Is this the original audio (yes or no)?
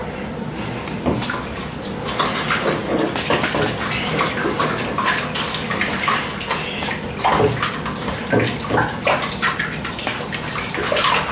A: yes